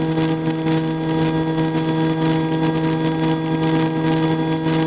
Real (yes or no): yes